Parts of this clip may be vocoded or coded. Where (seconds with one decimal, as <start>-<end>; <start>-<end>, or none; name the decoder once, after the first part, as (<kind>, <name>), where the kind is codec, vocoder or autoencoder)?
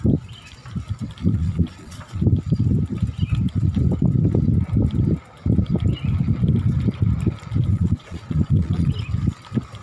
1.2-2.2 (vocoder, Vocos); 7.7-8.9